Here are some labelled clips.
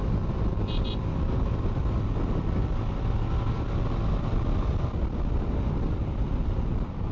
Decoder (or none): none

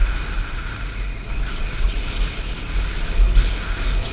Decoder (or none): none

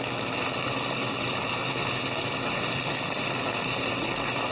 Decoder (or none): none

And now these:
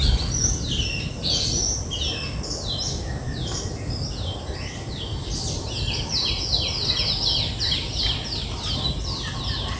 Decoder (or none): none